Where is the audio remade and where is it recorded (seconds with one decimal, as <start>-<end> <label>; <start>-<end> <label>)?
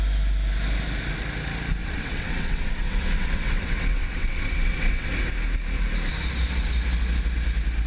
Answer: 0.0-1.8 recorded; 1.8-5.1 remade; 5.1-7.9 recorded